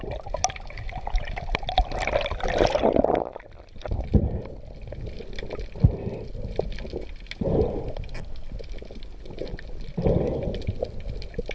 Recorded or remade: recorded